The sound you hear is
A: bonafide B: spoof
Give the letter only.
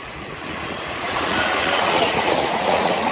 B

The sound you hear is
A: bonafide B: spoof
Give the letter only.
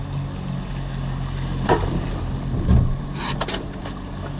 A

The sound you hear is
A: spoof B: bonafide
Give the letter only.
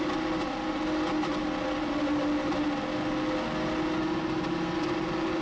B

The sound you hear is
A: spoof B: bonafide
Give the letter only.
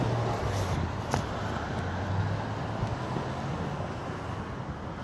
B